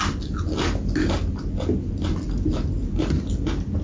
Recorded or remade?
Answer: recorded